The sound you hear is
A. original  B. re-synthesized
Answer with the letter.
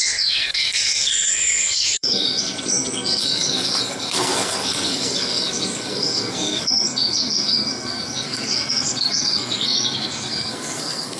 B